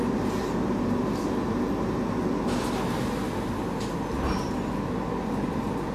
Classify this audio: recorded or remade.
recorded